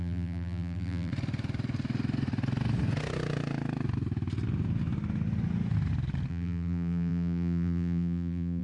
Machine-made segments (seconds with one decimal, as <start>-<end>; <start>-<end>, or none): 0.0-1.1; 6.3-8.6

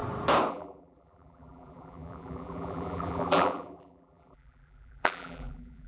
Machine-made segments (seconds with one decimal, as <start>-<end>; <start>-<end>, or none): 0.5-5.9

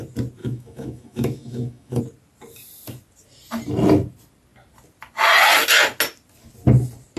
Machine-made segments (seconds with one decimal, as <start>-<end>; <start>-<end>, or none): 0.4-2.0

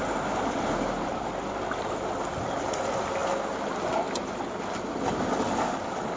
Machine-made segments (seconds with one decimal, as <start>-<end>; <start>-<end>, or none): none

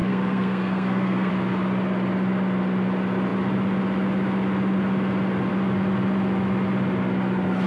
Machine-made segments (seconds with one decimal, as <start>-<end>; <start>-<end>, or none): 0.0-1.3